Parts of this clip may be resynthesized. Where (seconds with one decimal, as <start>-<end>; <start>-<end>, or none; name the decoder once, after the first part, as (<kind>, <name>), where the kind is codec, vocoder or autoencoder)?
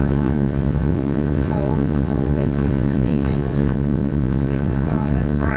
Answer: 0.0-5.6 (vocoder, WaveNeXt)